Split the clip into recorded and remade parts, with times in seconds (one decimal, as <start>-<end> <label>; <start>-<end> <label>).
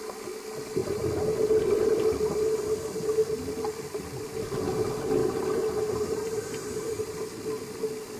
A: 0.0-5.2 recorded; 5.2-7.0 remade; 7.0-8.2 recorded